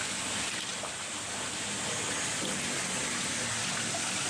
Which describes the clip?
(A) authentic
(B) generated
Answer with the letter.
A